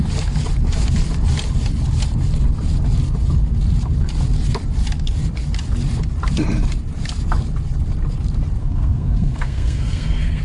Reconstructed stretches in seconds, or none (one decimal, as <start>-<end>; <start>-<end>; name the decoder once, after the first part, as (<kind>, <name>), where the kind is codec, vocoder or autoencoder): 8.6-10.4 (codec, SNAC)